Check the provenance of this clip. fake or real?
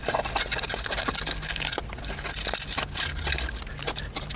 real